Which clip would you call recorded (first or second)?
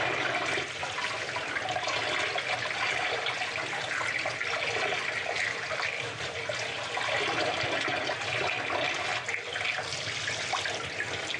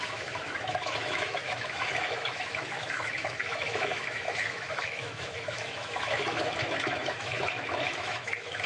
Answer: first